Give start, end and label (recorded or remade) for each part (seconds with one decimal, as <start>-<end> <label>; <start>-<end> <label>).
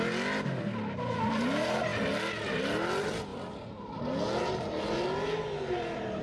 0.0-6.2 recorded